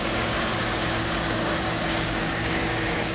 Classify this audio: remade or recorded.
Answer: remade